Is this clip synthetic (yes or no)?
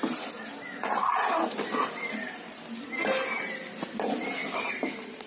no